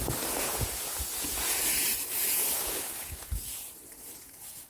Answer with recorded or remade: remade